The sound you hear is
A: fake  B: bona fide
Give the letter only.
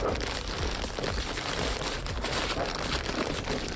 B